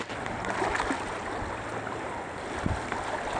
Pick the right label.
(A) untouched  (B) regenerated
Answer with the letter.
A